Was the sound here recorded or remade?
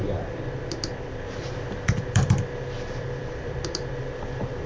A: remade